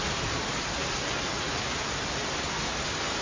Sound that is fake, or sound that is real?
real